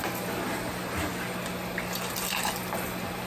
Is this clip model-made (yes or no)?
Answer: no